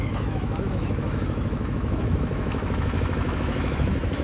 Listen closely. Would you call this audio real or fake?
fake